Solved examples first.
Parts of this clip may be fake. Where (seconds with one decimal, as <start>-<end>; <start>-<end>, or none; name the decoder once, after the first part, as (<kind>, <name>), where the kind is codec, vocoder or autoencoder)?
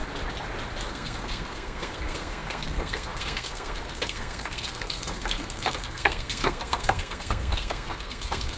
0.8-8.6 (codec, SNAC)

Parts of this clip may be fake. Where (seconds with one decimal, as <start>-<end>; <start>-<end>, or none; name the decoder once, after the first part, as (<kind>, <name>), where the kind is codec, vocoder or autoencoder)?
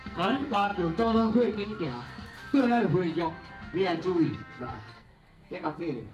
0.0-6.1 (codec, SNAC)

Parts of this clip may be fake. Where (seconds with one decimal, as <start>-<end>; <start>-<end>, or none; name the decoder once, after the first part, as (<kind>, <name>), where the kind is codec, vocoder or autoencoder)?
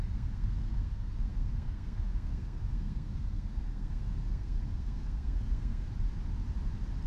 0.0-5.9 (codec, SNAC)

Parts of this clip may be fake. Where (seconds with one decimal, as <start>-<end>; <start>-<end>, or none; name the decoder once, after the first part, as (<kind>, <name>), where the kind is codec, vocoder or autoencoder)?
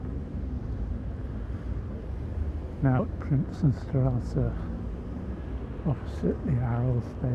none